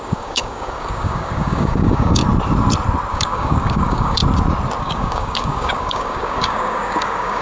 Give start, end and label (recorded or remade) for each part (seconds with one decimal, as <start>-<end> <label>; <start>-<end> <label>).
0.0-2.2 remade; 2.2-3.1 recorded; 3.1-4.2 remade; 4.2-4.8 recorded; 4.8-7.4 remade